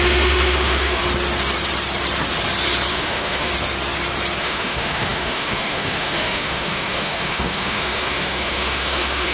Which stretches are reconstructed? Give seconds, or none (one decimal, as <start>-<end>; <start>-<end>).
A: 0.0-1.0; 2.9-3.5; 4.4-9.3